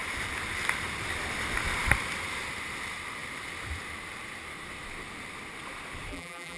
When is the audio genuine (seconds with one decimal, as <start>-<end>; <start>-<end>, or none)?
0.0-6.1